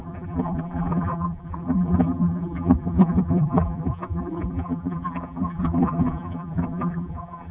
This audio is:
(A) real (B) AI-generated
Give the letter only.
B